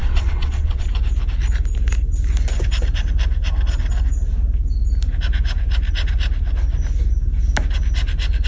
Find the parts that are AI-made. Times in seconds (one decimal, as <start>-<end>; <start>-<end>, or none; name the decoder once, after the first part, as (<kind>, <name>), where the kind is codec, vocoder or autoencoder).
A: 0.0-0.9 (vocoder, WaveNeXt)